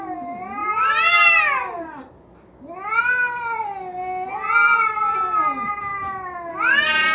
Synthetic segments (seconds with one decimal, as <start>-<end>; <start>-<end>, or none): none